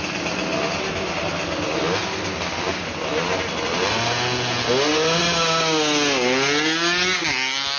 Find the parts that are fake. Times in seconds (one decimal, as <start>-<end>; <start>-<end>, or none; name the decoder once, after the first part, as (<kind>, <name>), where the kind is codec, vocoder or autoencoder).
none